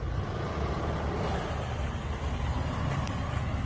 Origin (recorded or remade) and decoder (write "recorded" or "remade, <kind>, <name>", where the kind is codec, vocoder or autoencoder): recorded